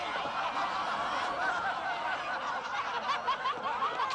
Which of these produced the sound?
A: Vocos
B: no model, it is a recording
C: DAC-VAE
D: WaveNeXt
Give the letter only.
B